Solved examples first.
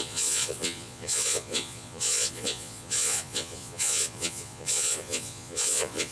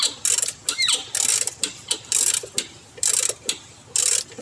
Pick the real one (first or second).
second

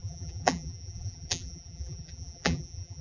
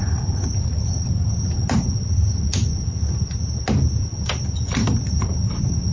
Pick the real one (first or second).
second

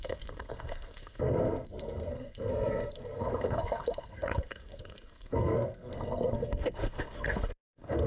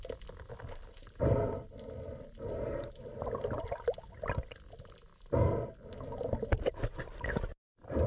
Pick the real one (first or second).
second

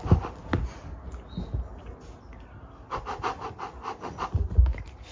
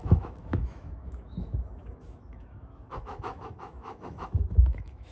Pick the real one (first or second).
first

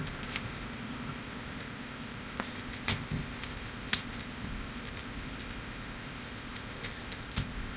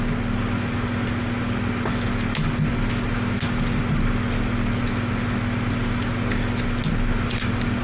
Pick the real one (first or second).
second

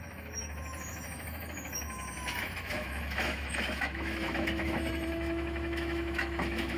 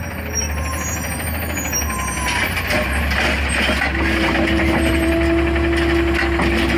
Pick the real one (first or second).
second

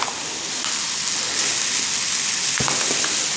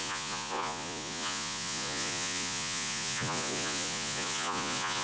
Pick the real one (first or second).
first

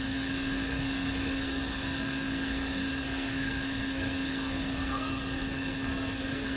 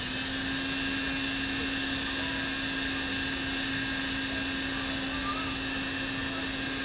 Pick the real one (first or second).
second